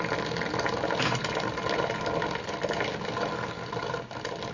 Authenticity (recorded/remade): recorded